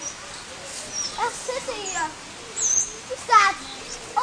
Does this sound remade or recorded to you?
recorded